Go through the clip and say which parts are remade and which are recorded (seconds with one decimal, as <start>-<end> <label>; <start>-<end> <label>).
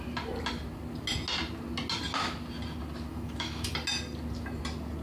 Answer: 0.0-3.1 recorded; 3.1-3.7 remade; 3.7-5.0 recorded